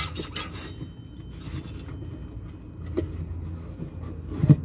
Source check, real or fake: real